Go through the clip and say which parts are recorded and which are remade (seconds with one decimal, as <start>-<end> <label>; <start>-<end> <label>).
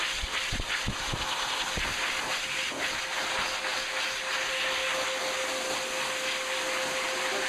0.0-7.5 recorded